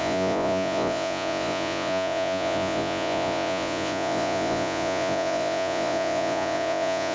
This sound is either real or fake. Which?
fake